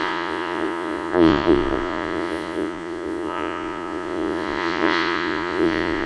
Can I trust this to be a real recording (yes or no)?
no